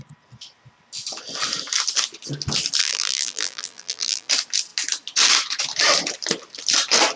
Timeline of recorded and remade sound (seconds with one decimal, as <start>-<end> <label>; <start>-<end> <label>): 0.0-2.8 recorded; 2.8-4.3 remade; 4.3-7.2 recorded